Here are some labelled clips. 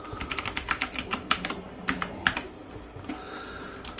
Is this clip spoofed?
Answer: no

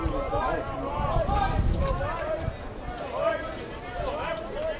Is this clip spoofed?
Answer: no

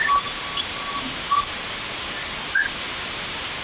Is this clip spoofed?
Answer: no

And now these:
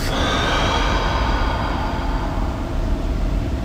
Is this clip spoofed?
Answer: no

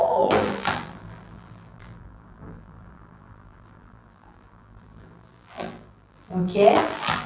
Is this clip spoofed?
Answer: yes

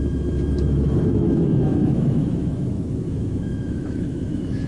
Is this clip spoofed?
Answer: yes